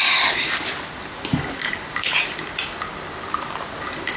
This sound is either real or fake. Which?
real